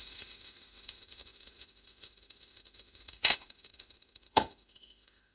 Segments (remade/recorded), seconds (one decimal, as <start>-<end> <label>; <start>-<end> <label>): 0.0-5.3 remade